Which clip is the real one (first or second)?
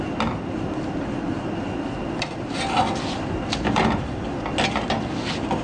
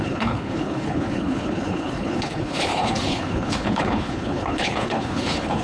first